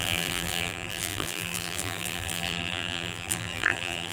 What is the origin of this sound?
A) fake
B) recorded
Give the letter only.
A